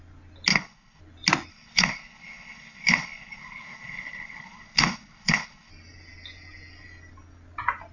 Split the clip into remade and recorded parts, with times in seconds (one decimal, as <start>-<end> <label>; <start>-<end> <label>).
0.0-0.5 recorded; 0.5-1.0 remade; 1.0-1.5 recorded; 1.5-5.7 remade; 5.7-7.9 recorded